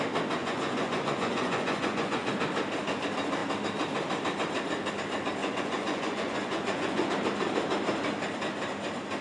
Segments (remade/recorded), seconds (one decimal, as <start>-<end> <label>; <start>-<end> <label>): 0.0-0.4 recorded; 0.4-2.3 remade; 2.3-5.4 recorded; 5.4-7.1 remade; 7.1-9.2 recorded